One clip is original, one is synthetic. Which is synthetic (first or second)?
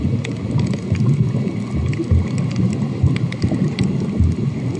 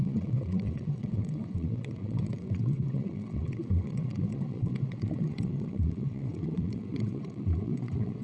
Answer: second